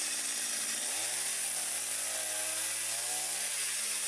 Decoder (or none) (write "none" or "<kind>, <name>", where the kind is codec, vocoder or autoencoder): none